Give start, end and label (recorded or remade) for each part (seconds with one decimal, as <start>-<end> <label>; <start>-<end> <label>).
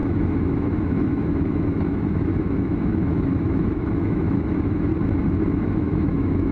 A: 0.0-4.9 remade; 4.9-5.7 recorded; 5.7-6.5 remade